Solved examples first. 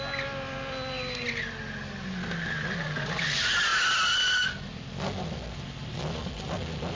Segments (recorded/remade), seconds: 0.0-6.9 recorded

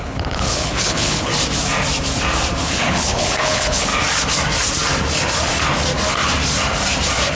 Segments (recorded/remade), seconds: 0.0-1.3 remade; 1.3-2.6 recorded; 2.6-3.9 remade; 3.9-7.3 recorded